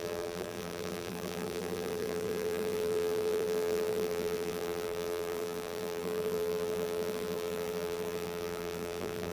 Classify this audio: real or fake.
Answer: fake